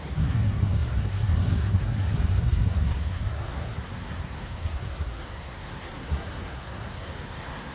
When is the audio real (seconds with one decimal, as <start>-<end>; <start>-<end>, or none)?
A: none